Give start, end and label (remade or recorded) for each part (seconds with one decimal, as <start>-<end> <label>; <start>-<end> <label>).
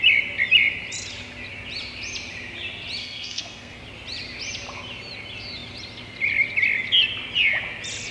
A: 0.0-3.0 recorded; 3.0-3.8 remade; 3.8-8.1 recorded